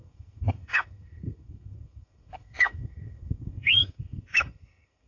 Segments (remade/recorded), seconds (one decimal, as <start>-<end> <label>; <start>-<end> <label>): 0.0-5.1 remade